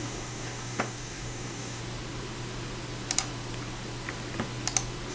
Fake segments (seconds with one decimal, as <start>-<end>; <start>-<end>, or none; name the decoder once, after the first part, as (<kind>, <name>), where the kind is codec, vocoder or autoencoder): 0.0-1.8 (codec, DAC)